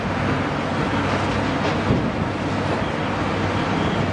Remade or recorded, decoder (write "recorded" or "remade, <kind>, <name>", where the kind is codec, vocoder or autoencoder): recorded